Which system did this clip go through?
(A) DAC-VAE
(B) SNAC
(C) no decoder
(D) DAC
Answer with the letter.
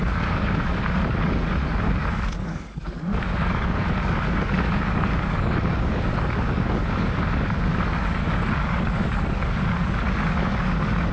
D